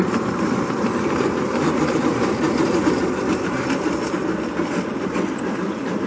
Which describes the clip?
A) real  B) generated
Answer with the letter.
B